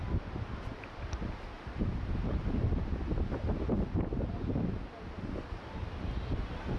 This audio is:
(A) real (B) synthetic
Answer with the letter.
A